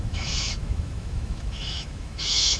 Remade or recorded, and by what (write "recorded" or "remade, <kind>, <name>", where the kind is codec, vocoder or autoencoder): remade, autoencoder, DAC-VAE